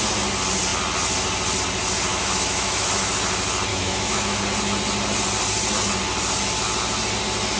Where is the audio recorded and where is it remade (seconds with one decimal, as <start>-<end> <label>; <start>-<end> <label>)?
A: 0.0-2.1 recorded; 2.1-2.9 remade; 2.9-3.7 recorded; 3.7-4.4 remade; 4.4-7.6 recorded